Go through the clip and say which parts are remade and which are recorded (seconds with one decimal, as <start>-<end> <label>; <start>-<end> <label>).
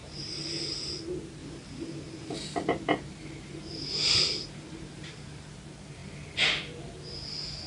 0.0-0.8 remade; 0.8-1.4 recorded; 1.4-5.6 remade; 5.6-7.7 recorded